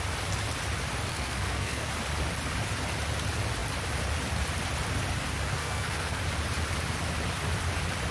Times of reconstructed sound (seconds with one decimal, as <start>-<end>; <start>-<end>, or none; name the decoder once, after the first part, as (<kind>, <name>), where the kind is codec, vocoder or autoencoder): 1.1-1.9 (codec, SNAC); 5.6-6.2